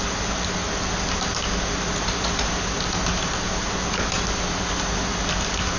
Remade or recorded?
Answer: recorded